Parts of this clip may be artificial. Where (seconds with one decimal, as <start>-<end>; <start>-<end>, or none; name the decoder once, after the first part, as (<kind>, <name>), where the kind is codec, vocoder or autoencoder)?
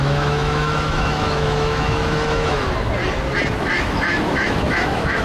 0.0-2.6 (autoencoder, DAC-VAE); 3.6-5.2